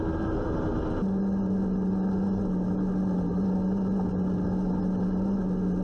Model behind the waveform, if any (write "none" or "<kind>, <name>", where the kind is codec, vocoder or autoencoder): none